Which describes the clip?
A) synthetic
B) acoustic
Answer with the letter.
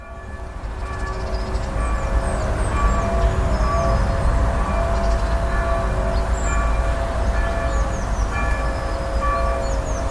B